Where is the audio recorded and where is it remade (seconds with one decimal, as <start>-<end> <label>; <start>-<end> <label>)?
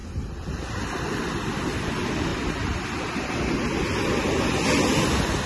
0.0-5.5 recorded